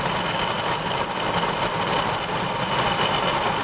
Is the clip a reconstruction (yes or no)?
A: no